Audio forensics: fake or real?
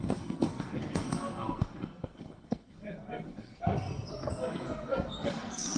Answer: fake